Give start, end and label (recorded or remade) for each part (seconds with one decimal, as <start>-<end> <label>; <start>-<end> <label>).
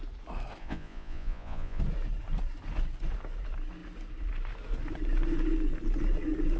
0.0-0.6 recorded; 0.6-1.8 remade; 1.8-6.6 recorded